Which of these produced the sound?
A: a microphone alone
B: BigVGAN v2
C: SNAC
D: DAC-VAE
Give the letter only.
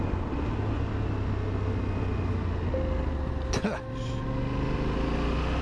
A